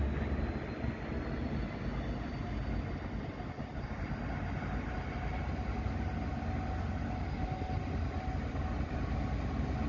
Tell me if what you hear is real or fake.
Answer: real